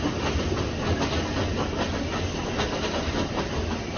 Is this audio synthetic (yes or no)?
no